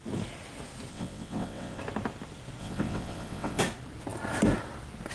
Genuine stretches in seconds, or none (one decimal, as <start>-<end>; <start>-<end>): 0.0-0.9; 1.8-2.6; 3.6-5.1